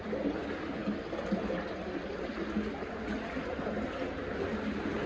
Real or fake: real